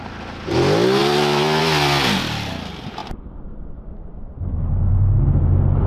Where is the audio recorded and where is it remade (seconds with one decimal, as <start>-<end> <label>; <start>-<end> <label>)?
0.0-5.9 recorded